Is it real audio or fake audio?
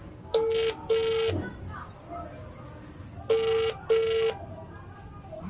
real